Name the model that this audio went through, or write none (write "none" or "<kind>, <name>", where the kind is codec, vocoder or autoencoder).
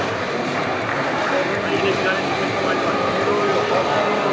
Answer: none